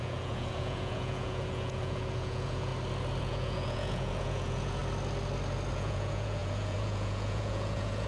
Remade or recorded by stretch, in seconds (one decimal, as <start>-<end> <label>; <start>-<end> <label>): 0.0-2.7 remade; 2.7-3.2 recorded; 3.2-4.8 remade; 4.8-5.7 recorded; 5.7-8.1 remade